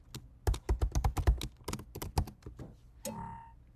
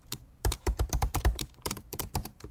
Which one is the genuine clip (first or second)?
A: first